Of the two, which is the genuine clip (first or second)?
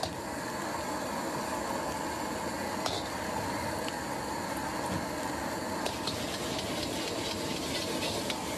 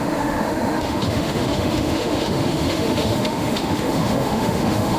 first